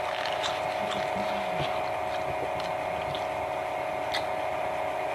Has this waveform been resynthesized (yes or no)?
no